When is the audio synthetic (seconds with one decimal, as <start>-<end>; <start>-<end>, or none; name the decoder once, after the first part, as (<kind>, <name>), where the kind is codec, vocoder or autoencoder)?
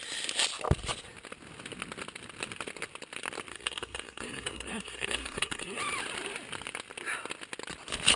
3.5-5.8 (codec, SNAC)